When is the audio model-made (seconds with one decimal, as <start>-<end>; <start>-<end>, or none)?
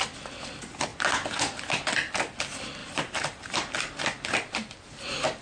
2.8-3.8